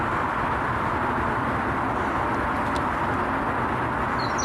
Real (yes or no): yes